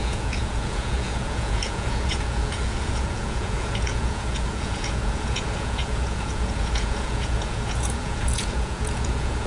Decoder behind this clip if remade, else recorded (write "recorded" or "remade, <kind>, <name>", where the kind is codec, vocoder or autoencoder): remade, vocoder, Vocos